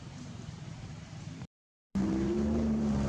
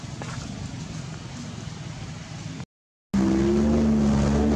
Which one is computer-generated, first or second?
first